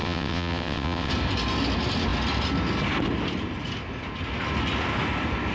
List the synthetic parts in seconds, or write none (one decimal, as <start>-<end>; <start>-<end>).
0.0-1.1